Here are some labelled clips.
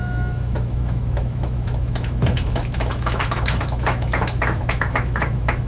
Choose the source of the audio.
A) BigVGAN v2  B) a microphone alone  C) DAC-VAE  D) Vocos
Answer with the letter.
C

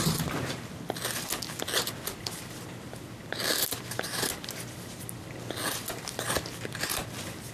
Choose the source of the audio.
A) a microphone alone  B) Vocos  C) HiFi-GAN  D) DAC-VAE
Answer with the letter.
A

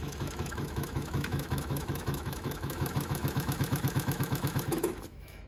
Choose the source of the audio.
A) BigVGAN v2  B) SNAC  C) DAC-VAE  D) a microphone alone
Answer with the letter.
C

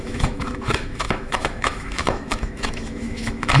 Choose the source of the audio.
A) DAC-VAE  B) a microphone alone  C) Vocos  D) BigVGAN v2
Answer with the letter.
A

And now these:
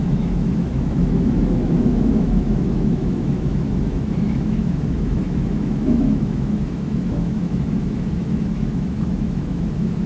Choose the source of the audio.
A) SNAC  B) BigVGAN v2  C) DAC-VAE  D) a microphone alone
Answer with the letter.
C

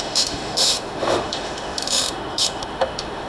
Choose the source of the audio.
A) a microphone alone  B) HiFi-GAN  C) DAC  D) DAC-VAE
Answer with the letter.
D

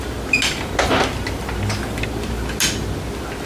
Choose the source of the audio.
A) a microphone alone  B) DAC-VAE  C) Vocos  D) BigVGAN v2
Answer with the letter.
A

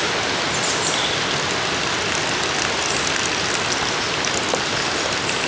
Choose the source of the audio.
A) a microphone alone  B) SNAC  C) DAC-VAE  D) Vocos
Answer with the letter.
A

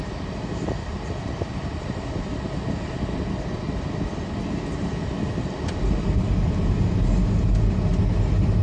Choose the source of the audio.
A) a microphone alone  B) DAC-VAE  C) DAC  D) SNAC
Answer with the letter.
A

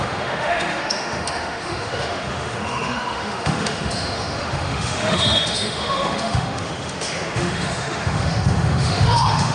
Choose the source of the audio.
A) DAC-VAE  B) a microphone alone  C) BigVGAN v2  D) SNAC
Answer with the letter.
A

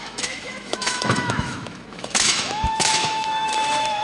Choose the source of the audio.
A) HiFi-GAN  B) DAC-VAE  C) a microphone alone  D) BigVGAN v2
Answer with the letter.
B